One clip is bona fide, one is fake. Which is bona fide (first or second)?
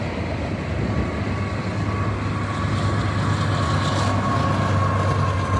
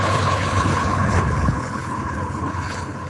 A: first